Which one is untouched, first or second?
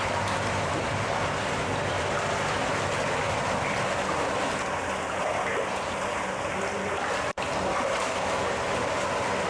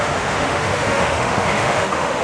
first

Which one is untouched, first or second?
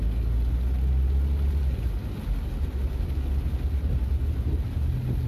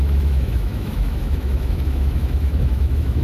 first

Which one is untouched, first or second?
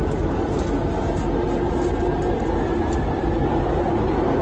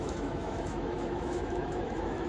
first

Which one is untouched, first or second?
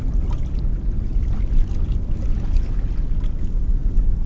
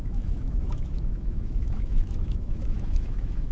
first